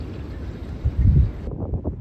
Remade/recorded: recorded